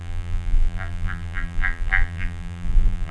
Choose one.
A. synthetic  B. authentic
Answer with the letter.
A